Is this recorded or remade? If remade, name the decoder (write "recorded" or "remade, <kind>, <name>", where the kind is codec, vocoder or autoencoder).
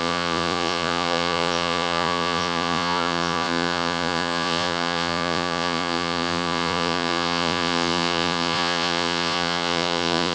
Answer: remade, vocoder, Vocos